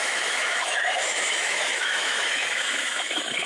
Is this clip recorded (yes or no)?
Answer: no